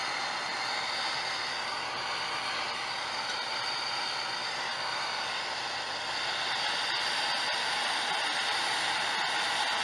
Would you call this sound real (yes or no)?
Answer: yes